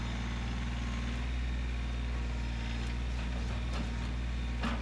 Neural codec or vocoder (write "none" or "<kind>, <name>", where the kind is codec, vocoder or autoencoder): none